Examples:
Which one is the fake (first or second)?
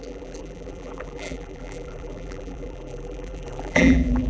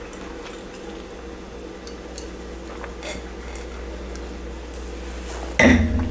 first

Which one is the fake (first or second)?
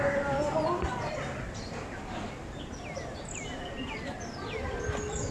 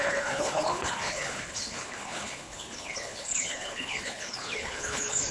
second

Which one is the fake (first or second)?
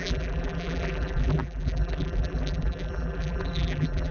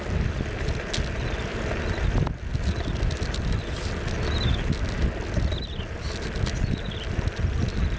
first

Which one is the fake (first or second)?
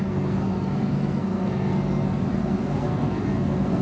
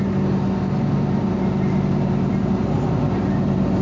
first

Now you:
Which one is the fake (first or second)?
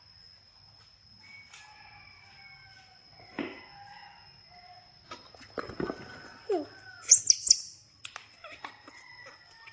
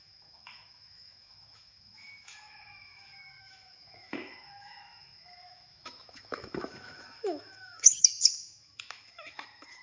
second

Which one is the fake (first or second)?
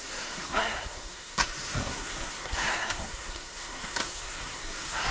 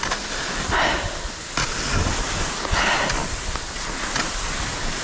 first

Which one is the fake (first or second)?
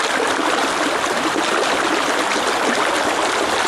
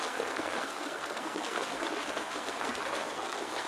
second